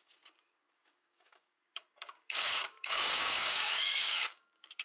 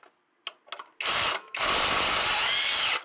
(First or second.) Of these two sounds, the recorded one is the second